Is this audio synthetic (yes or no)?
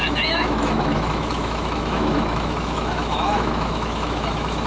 yes